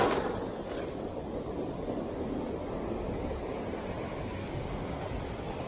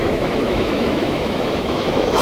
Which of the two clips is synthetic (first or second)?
second